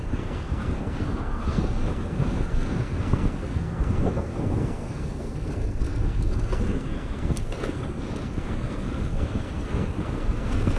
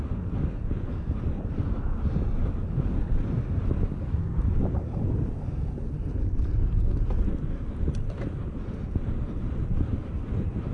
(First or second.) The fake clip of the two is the first